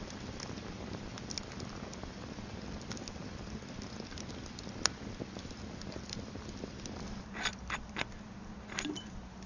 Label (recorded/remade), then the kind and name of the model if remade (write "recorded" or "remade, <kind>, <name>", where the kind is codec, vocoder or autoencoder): recorded